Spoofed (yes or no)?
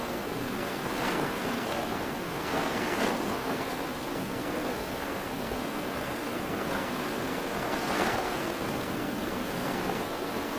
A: yes